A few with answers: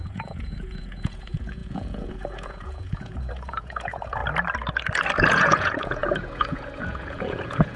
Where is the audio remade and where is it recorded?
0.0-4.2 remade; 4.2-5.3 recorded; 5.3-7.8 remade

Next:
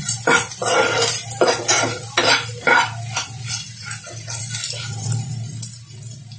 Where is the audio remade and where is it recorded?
0.0-6.4 recorded

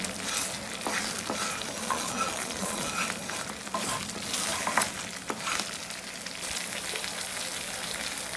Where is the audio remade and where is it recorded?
0.0-1.8 recorded; 1.8-2.9 remade; 2.9-8.4 recorded

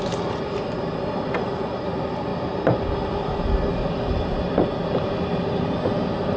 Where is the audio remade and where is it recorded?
0.0-6.4 recorded

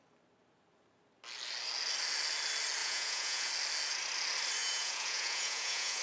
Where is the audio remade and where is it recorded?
0.0-2.8 recorded; 2.8-3.5 remade; 3.5-4.6 recorded; 4.6-6.0 remade

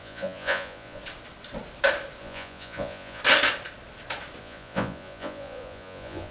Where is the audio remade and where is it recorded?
0.0-1.0 remade; 1.0-2.2 recorded; 2.2-3.2 remade; 3.2-4.4 recorded; 4.4-6.3 remade